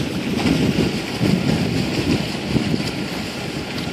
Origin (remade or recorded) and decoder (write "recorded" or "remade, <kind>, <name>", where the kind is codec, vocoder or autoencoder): recorded